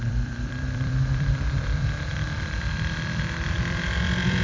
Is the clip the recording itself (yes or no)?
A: no